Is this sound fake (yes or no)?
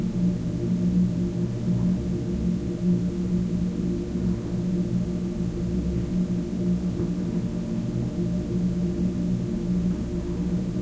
no